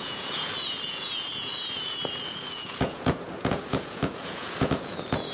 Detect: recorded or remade remade